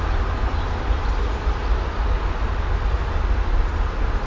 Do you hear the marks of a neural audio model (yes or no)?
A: yes